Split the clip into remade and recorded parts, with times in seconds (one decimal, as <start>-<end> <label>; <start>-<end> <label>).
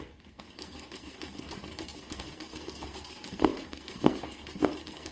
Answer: 0.0-5.1 remade